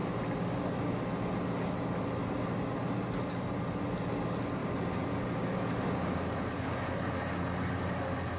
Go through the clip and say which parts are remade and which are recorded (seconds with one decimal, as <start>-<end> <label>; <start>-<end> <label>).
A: 0.0-8.4 recorded